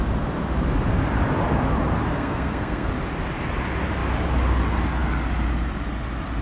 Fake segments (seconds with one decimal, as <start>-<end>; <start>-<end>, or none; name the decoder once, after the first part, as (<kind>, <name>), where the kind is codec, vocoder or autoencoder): 2.1-2.9 (codec, SNAC)